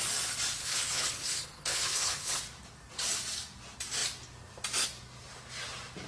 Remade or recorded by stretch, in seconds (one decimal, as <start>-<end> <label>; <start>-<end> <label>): 0.0-0.6 recorded; 0.6-2.4 remade; 2.4-6.1 recorded